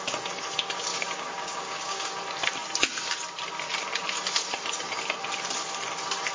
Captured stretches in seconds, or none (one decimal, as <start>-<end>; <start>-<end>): 0.0-0.9; 2.1-6.3

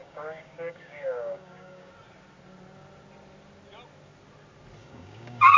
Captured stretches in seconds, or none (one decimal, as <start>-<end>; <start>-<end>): 1.9-4.8

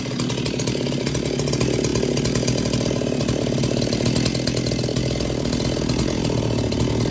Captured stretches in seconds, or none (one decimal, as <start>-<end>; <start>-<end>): 0.0-7.1

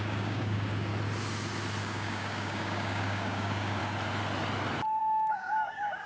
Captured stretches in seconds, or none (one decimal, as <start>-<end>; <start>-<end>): 0.9-1.8; 3.8-5.0

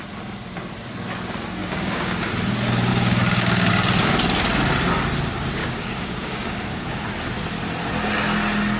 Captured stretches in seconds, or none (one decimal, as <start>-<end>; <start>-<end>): 0.0-1.6; 2.3-2.9; 3.7-5.6; 7.0-8.8

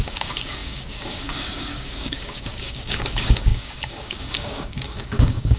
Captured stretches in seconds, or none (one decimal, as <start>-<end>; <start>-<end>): none

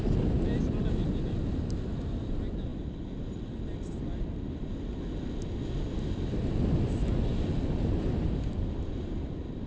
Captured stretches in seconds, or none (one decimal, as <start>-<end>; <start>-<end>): 0.0-9.7